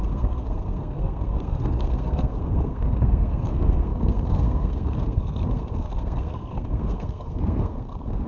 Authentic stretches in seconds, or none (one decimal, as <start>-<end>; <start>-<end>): none